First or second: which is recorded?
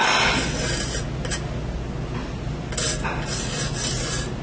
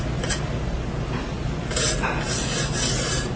first